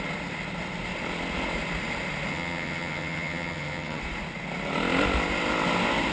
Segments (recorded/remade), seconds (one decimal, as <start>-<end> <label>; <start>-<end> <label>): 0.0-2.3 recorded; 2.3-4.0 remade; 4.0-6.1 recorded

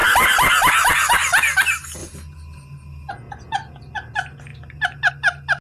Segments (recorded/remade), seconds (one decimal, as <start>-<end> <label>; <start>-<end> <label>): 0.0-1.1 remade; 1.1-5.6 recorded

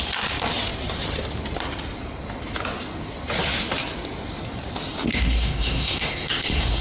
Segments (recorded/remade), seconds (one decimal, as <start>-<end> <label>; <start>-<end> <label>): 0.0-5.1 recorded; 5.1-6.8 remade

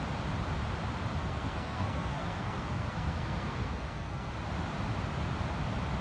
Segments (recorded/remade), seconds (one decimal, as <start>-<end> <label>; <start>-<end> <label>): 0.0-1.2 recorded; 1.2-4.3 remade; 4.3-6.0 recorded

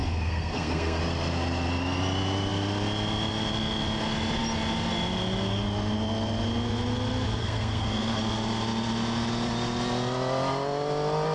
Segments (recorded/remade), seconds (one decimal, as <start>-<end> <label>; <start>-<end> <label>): 0.0-1.0 remade; 1.0-7.4 recorded; 7.4-8.2 remade; 8.2-11.3 recorded

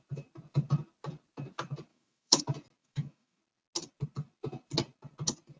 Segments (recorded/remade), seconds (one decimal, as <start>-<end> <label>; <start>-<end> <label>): 0.0-1.9 recorded; 1.9-2.4 remade; 2.4-2.8 recorded; 2.8-3.4 remade; 3.4-5.6 recorded

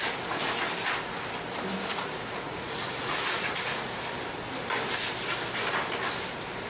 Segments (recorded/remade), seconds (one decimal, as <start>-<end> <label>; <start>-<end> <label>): 0.0-1.9 recorded; 1.9-4.0 remade; 4.0-6.7 recorded